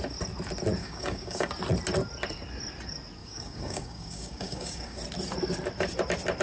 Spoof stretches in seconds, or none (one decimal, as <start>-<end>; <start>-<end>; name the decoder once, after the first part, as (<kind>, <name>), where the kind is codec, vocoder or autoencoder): 0.8-1.5 (codec, DAC); 3.2-5.0